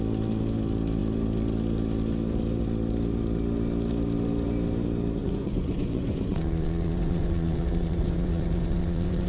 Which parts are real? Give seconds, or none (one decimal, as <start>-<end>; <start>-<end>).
0.0-5.2